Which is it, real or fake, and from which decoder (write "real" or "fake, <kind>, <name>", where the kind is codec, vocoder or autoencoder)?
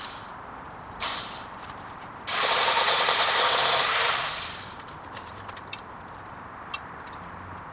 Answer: fake, vocoder, BigVGAN v2